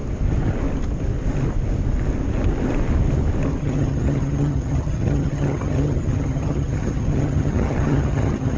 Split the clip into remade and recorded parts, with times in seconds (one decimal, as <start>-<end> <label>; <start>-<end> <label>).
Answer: 0.0-3.6 recorded; 3.6-8.6 remade

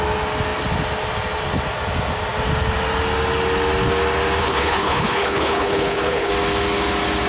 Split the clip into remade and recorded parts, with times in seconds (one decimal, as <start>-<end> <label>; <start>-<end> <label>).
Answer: 0.0-4.4 recorded; 4.4-6.3 remade; 6.3-7.3 recorded

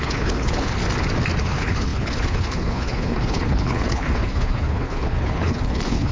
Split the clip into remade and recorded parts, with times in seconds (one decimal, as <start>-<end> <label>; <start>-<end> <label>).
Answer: 0.0-0.8 remade; 0.8-1.4 recorded; 1.4-6.1 remade

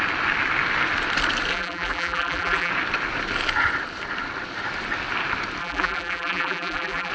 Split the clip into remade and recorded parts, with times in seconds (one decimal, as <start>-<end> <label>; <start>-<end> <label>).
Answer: 0.0-1.5 recorded; 1.5-2.7 remade; 2.7-5.6 recorded; 5.6-7.1 remade

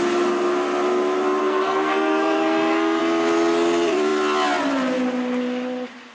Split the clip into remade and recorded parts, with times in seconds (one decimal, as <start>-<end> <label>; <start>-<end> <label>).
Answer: 0.0-1.4 recorded; 1.4-3.0 remade; 3.0-6.1 recorded